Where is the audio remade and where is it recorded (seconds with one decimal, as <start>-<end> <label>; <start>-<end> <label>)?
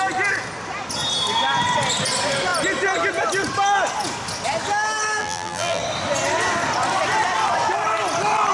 0.0-5.2 recorded; 5.2-5.8 remade; 5.8-8.5 recorded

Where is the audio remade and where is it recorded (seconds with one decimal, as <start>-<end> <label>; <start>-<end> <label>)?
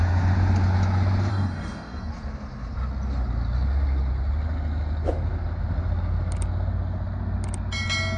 0.0-1.3 recorded; 1.3-2.1 remade; 2.1-8.2 recorded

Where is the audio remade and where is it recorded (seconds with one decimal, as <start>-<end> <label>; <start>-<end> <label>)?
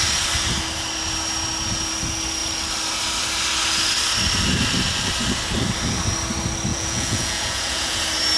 0.0-6.7 recorded; 6.7-8.0 remade; 8.0-8.4 recorded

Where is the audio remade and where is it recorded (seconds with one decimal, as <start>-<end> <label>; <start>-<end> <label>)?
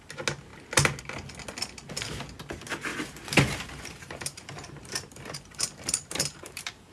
0.0-2.9 recorded; 2.9-6.9 remade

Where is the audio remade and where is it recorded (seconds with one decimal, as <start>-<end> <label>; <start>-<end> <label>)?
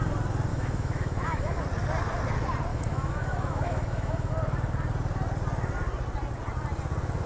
0.0-0.5 recorded; 0.5-1.6 remade; 1.6-2.7 recorded; 2.7-4.3 remade; 4.3-7.3 recorded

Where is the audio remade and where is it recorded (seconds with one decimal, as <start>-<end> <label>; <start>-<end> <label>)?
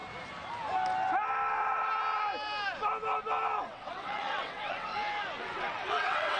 0.0-3.6 recorded; 3.6-4.9 remade; 4.9-5.4 recorded; 5.4-6.4 remade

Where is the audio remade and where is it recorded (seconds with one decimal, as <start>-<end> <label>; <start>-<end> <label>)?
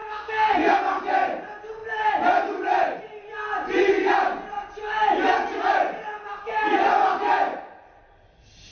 0.0-0.8 remade; 0.8-8.7 recorded